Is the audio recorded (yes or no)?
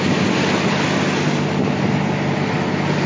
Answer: yes